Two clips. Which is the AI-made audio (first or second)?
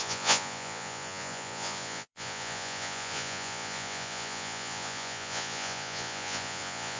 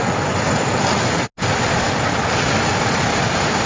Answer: first